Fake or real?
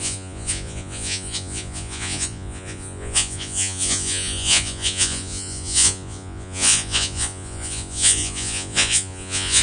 fake